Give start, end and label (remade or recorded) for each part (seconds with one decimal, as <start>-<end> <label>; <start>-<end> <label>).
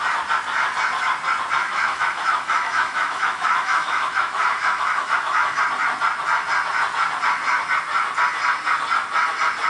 0.0-1.6 recorded; 1.6-5.6 remade; 5.6-9.7 recorded